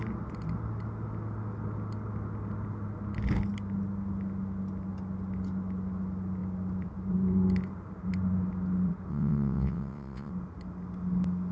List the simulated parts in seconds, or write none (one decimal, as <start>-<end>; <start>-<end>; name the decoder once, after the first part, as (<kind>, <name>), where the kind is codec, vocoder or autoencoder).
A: 9.1-10.3 (vocoder, WaveNeXt)